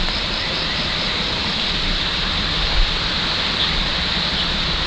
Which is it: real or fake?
real